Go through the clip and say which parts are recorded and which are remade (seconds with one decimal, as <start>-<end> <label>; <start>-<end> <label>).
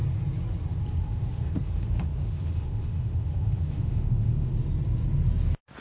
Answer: 0.0-1.0 recorded; 1.0-4.5 remade; 4.5-5.8 recorded